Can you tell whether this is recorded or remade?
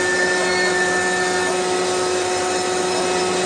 recorded